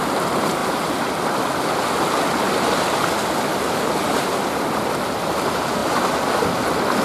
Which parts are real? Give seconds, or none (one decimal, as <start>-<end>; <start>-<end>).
0.0-7.0